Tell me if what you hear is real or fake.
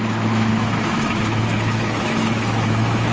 fake